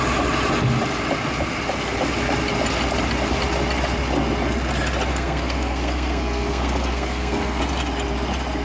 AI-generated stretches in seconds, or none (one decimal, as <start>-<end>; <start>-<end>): 5.1-7.6